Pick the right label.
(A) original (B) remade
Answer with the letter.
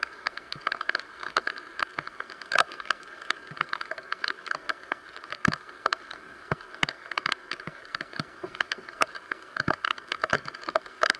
B